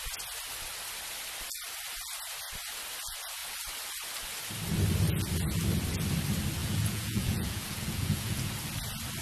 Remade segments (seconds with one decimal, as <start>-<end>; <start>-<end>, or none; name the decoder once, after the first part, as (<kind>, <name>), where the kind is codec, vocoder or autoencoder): 6.6-8.5 (vocoder, Vocos)

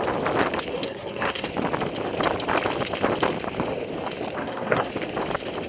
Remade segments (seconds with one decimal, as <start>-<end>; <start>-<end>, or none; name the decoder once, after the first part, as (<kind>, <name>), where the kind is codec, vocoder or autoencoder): 0.7-1.5 (codec, SNAC); 4.4-4.9

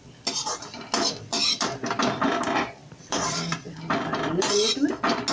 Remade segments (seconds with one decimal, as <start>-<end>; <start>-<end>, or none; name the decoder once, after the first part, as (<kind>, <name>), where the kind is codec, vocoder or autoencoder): 1.4-2.2 (vocoder, BigVGAN v2); 2.8-4.5